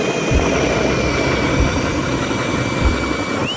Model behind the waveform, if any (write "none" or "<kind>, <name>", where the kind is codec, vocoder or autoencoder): none